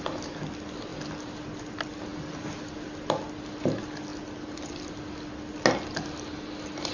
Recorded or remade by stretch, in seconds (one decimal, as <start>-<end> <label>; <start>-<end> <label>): 0.0-6.9 recorded

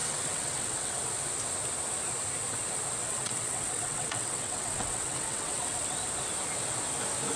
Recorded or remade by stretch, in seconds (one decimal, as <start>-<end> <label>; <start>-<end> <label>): 0.0-1.0 remade; 1.0-3.0 recorded; 3.0-6.0 remade; 6.0-7.4 recorded

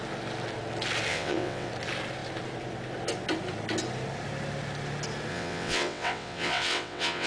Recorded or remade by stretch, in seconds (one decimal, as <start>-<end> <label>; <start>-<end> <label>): 0.0-1.1 recorded; 1.1-1.7 remade; 1.7-5.3 recorded; 5.3-7.3 remade

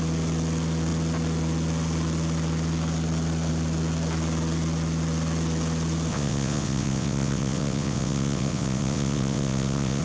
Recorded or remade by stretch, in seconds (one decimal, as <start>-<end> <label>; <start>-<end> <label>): 0.0-6.1 recorded; 6.1-10.0 remade

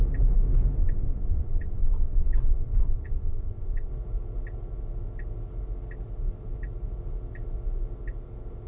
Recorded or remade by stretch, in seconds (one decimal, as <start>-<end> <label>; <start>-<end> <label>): 0.0-0.8 recorded; 0.8-3.9 remade; 3.9-8.7 recorded

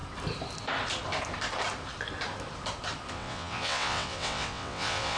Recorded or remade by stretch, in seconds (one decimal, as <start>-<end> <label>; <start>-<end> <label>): 0.0-3.1 recorded; 3.1-5.2 remade